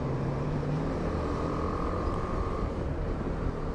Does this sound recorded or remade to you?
remade